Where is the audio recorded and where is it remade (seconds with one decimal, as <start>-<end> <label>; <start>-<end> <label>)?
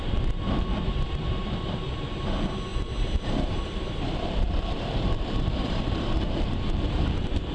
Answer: 0.0-2.7 recorded; 2.7-7.5 remade